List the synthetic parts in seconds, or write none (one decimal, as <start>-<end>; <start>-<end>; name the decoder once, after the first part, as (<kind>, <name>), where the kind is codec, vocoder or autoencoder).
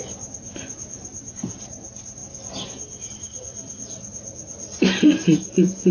0.0-2.2 (vocoder, BigVGAN v2); 3.1-5.9